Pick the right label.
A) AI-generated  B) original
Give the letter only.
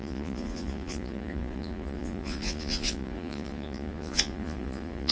A